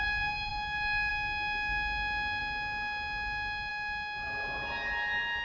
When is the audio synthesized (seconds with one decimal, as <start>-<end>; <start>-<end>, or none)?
none